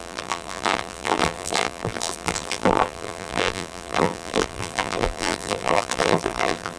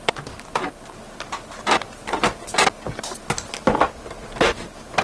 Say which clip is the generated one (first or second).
first